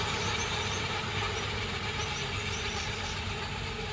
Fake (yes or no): no